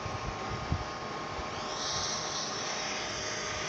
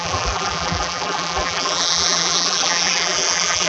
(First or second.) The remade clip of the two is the second